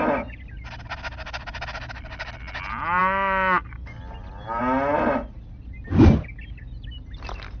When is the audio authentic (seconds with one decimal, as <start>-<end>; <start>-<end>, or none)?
0.0-7.6